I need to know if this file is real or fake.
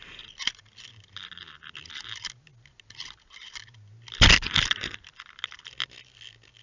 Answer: real